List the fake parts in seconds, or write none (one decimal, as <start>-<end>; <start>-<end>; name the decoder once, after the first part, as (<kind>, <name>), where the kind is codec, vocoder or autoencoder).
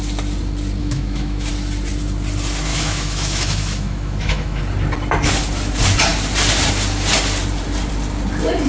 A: 0.8-1.5 (autoencoder, DAC-VAE); 2.7-4.6